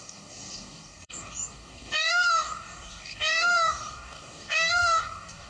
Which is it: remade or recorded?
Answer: remade